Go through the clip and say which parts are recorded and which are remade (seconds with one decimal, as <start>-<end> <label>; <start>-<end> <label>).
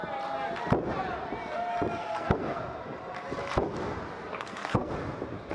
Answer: 0.0-2.0 recorded; 2.0-2.6 remade; 2.6-4.3 recorded; 4.3-4.9 remade; 4.9-5.5 recorded